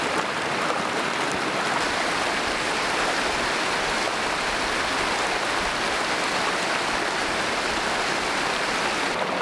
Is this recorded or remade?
recorded